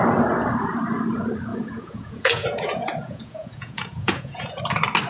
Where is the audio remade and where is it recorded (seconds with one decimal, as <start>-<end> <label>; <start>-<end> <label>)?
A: 0.0-1.5 recorded; 1.5-4.6 remade; 4.6-5.1 recorded